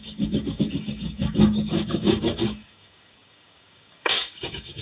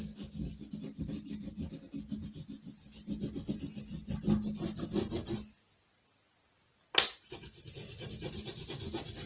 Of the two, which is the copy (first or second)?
first